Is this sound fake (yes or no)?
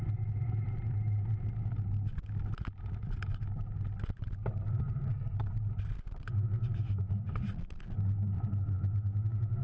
no